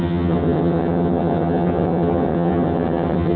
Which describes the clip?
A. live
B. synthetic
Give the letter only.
B